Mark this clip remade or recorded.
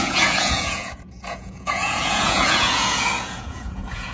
remade